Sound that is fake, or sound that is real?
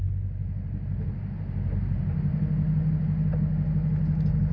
real